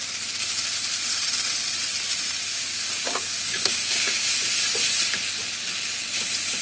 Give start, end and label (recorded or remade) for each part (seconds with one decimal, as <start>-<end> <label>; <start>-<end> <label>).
0.0-2.5 recorded; 2.5-4.2 remade; 4.2-6.6 recorded